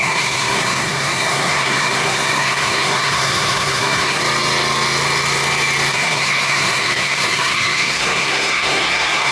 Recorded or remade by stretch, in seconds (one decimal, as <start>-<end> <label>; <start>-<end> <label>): 0.0-4.2 remade; 4.2-5.9 recorded; 5.9-9.3 remade